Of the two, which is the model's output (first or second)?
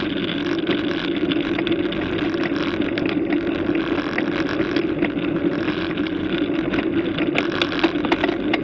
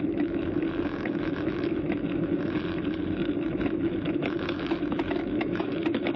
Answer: second